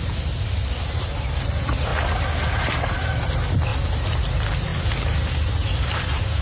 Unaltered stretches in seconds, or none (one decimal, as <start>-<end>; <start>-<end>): 0.0-6.4